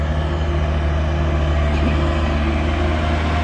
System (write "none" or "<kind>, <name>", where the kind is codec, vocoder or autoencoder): none